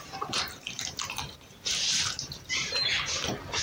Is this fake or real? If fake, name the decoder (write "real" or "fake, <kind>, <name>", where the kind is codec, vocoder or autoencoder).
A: fake, vocoder, BigVGAN v2